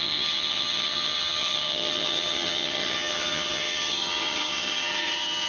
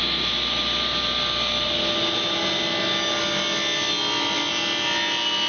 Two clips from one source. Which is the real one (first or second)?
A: second